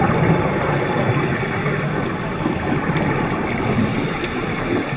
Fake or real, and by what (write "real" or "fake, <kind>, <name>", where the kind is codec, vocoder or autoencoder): real